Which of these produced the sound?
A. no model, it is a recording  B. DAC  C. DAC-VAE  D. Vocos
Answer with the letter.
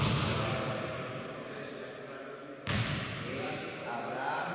A